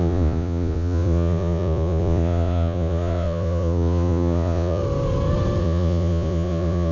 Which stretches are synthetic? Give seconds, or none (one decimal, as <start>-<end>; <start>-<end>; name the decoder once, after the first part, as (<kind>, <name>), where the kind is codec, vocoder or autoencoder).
0.0-4.8 (vocoder, Vocos); 5.6-6.9

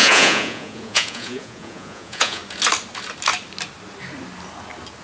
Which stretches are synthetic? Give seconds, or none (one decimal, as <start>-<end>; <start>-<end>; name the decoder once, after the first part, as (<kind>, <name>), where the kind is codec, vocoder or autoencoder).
0.0-2.4 (vocoder, Vocos)

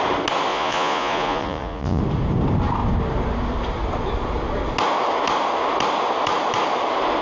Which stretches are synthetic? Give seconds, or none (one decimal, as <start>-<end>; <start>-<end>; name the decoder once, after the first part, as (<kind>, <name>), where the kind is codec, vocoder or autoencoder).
0.5-2.0 (vocoder, Vocos)

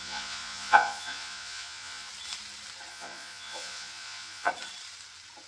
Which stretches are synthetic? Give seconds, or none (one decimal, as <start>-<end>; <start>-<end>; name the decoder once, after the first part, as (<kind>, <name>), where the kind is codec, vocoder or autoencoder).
0.0-2.1 (vocoder, Vocos); 2.9-4.5

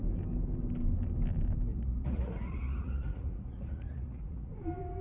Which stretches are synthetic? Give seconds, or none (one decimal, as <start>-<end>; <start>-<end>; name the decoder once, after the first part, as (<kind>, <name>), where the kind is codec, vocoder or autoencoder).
1.7-4.5 (vocoder, Vocos)

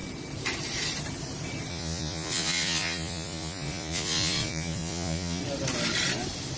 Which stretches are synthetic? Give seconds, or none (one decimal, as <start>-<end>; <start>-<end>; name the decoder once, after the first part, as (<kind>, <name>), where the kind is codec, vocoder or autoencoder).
1.7-5.4 (vocoder, Vocos)

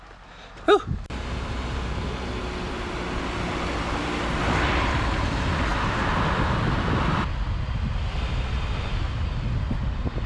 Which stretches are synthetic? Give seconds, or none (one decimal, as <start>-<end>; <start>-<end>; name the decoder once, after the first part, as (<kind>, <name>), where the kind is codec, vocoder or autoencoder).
none